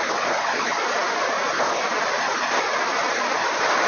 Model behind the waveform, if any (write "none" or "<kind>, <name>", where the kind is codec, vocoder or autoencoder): none